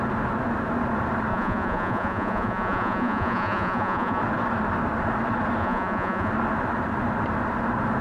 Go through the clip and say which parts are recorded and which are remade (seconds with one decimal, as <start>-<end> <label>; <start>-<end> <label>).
0.0-1.3 recorded; 1.3-4.2 remade; 4.2-5.6 recorded; 5.6-6.3 remade; 6.3-8.0 recorded